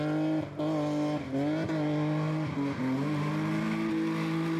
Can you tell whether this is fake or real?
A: real